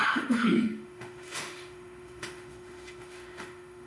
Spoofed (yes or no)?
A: yes